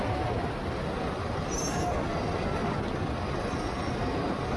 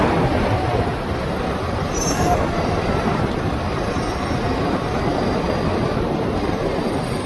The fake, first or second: second